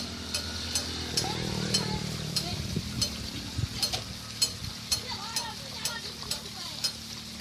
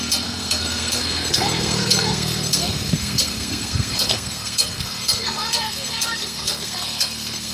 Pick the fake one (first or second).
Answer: second